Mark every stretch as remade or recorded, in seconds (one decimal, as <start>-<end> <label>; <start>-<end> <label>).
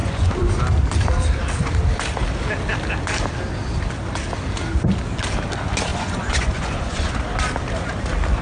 0.0-0.6 remade; 0.6-5.9 recorded; 5.9-7.1 remade; 7.1-8.4 recorded